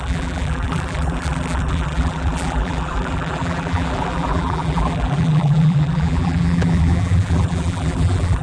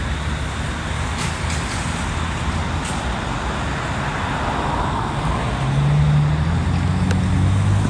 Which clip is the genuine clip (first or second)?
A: second